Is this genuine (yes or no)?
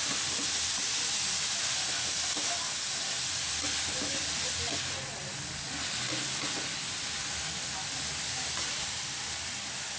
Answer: yes